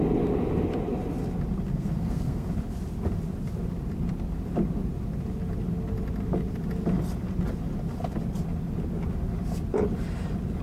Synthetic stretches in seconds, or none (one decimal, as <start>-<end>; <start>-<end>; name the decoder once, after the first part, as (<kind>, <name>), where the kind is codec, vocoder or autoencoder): 1.7-2.5 (codec, SNAC)